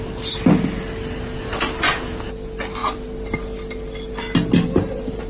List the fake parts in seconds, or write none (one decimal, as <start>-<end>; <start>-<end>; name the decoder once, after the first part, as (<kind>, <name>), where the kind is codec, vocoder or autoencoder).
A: none